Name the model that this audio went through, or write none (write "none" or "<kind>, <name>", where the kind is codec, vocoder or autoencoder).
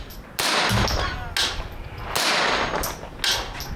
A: none